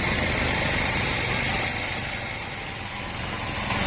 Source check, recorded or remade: recorded